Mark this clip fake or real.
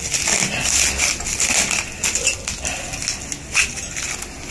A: real